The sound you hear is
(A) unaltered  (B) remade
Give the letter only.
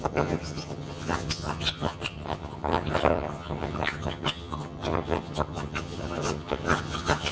B